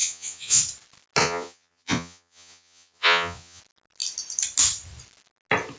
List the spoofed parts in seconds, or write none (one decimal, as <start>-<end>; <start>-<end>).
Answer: 0.0-0.6; 1.2-3.6